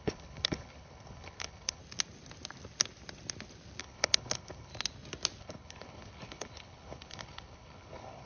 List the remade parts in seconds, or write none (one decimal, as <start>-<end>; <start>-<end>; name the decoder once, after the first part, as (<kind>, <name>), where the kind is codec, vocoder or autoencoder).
0.0-1.8 (codec, HILCodec); 3.8-4.7; 5.4-8.3